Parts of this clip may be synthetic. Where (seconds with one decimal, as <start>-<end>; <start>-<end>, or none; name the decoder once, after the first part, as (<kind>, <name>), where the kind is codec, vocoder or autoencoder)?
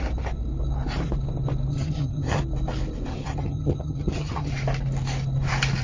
1.7-2.4 (vocoder, HiFi-GAN); 3.1-4.5